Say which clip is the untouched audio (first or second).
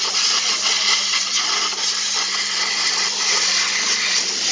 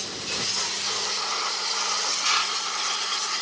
second